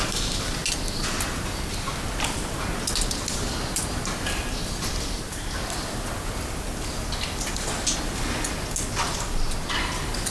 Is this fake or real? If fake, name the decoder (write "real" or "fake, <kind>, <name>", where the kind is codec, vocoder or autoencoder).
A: real